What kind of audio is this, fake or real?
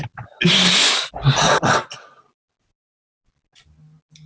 real